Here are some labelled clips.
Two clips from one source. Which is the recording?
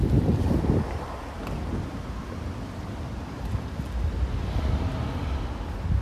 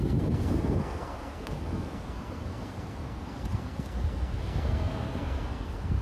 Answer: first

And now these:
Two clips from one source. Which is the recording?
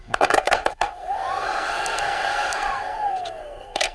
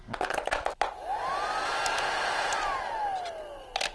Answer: second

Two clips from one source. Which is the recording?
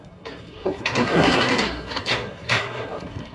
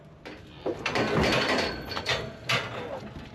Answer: second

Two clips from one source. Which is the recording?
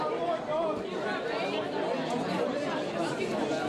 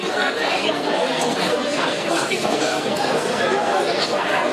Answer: first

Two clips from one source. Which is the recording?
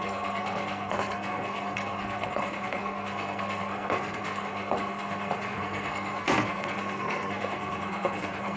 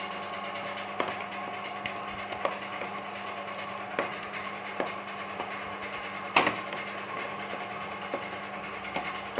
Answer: second